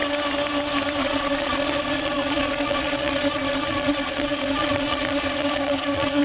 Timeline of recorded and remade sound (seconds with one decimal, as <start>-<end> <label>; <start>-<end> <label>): 0.0-1.0 recorded; 1.0-6.2 remade